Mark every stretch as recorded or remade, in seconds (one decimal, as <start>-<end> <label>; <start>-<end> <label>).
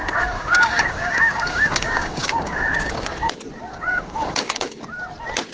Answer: 0.0-3.3 remade; 3.3-3.7 recorded; 3.7-4.8 remade; 4.8-5.5 recorded